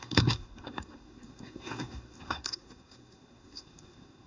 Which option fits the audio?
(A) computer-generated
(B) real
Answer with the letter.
A